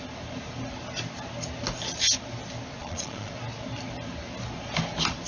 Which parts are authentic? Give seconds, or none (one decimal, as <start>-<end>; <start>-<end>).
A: 0.0-2.8; 3.3-5.3